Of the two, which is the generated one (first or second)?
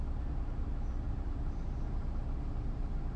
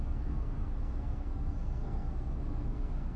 second